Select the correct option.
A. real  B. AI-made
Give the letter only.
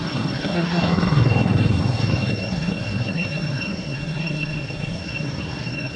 B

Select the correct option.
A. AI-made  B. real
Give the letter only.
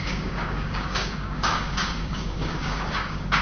A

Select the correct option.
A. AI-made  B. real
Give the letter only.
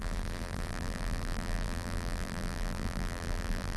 A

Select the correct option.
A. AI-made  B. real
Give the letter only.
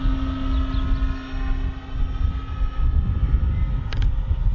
B